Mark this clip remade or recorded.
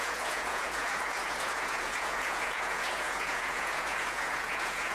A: remade